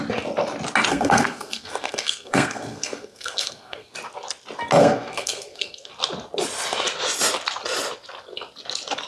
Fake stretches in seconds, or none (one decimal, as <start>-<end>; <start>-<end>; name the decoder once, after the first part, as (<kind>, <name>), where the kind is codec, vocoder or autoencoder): 0.9-3.9 (codec, SNAC); 4.8-5.9